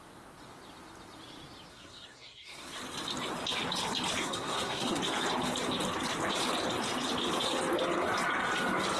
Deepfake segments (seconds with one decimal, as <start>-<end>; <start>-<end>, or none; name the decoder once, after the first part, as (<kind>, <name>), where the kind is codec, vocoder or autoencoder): 1.7-2.8 (codec, SNAC); 4.2-5.0